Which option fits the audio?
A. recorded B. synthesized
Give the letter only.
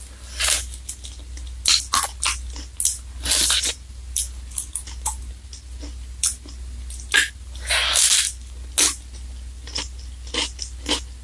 A